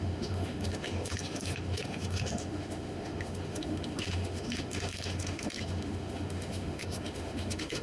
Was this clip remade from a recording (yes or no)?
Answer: yes